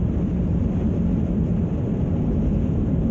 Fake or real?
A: fake